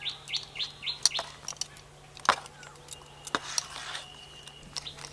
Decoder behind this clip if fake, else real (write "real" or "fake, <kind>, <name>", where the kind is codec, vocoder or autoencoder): real